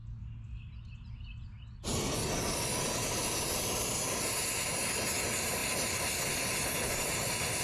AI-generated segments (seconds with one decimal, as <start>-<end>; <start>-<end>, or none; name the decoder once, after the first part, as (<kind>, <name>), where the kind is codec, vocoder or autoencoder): none